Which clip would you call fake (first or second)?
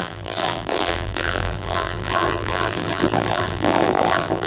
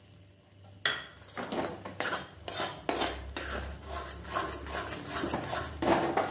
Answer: first